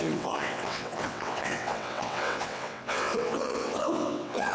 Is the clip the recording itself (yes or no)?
no